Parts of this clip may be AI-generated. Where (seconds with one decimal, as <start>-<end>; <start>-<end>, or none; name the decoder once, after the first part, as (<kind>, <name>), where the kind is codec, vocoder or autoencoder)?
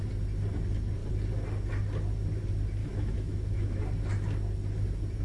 2.8-3.8 (autoencoder, DAC-VAE)